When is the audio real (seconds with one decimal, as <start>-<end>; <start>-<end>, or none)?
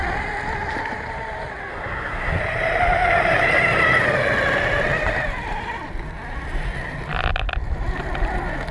0.0-1.7; 2.4-8.7